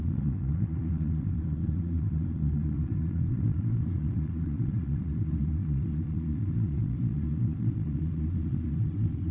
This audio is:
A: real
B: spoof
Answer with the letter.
B